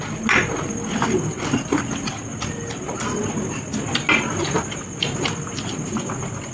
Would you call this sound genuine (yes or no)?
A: yes